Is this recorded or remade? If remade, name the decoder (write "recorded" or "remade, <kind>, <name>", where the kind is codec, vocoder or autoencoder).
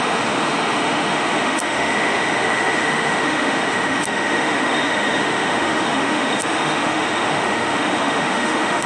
remade, autoencoder, DAC-VAE